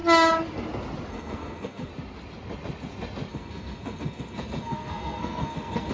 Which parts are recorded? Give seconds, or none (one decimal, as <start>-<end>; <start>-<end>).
0.0-1.1; 1.9-3.3